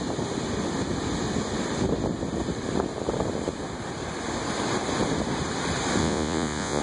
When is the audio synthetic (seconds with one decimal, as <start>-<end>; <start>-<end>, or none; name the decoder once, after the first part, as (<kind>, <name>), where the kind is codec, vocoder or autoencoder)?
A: 6.0-6.8 (vocoder, Vocos)